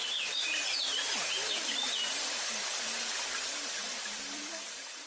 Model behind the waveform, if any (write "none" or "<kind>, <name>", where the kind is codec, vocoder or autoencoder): vocoder, BigVGAN v2